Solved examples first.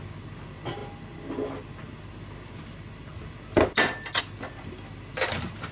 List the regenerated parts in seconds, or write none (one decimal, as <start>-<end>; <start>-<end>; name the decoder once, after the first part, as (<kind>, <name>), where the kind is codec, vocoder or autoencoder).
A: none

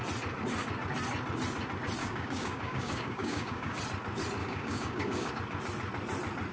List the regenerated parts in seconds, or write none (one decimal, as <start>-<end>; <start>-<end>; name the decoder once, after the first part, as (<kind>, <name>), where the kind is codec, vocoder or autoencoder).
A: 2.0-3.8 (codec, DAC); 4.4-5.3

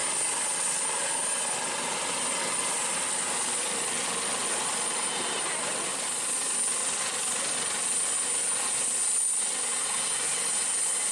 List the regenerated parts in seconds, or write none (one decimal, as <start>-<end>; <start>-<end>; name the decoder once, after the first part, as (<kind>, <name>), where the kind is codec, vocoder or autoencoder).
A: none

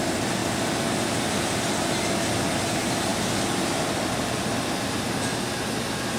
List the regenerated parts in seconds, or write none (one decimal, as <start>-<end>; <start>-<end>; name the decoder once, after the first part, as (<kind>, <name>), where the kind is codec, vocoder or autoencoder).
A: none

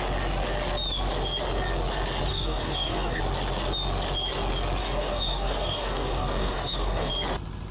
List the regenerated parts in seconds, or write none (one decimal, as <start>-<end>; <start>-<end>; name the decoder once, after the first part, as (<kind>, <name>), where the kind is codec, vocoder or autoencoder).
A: 2.3-3.2 (codec, DAC); 4.8-7.1

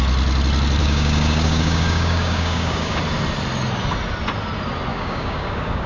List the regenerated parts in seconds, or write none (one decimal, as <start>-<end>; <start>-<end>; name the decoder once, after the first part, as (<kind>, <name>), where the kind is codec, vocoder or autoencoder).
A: 0.8-3.0 (codec, DAC); 4.9-5.9

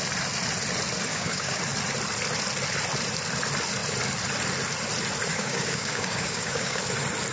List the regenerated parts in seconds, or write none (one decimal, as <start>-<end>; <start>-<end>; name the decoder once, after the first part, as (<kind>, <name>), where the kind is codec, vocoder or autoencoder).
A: 1.1-1.6 (codec, DAC); 5.3-6.8